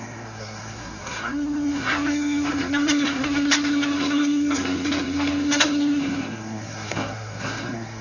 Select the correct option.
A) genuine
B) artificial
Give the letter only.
B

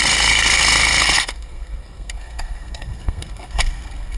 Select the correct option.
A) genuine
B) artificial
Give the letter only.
B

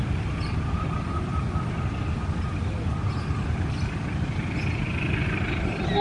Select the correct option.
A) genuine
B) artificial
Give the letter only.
A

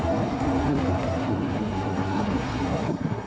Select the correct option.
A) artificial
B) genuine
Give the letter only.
A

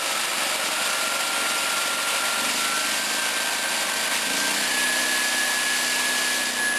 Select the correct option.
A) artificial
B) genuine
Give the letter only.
B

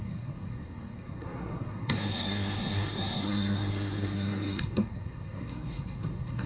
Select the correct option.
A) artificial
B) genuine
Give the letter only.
A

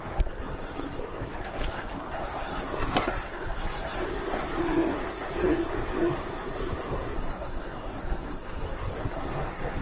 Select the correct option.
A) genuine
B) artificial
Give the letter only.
B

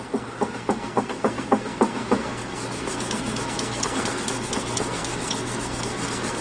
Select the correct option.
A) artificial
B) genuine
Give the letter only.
A